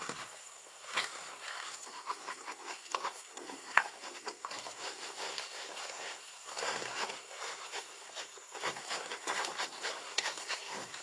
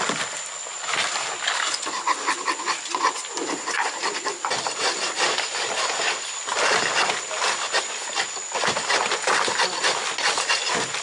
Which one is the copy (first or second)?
first